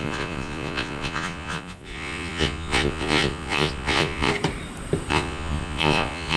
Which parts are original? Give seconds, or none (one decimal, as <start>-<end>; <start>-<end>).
4.3-5.1